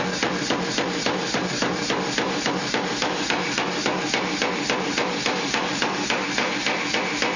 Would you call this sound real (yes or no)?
no